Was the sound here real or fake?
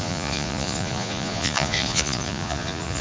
fake